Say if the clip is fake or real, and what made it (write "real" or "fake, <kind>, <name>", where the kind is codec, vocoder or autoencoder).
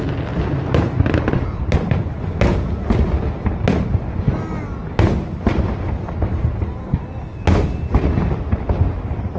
real